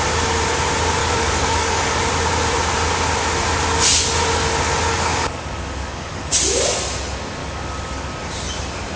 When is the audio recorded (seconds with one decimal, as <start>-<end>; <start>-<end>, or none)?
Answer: 0.0-1.0; 2.0-4.9; 6.3-7.4; 8.1-9.0